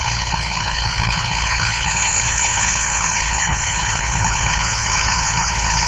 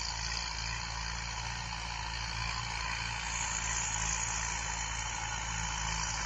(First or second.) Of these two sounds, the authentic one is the second